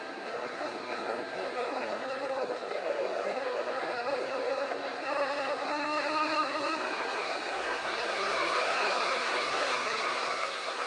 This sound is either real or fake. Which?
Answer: fake